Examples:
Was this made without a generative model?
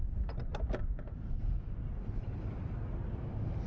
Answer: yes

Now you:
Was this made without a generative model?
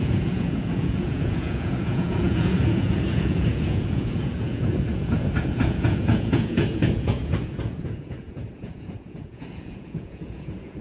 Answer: no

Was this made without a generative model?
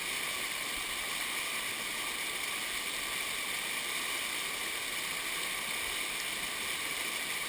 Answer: yes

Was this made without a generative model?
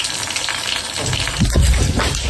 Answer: yes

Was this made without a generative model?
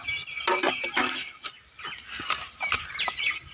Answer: yes